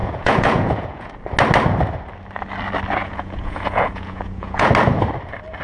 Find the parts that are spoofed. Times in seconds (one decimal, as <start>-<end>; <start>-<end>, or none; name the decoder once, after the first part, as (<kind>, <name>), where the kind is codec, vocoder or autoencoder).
0.0-1.1 (vocoder, Vocos); 3.0-4.7